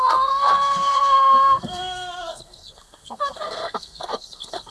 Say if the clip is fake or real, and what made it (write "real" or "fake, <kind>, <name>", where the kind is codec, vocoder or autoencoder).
fake, codec, SNAC